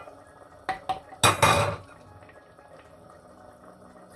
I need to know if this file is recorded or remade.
recorded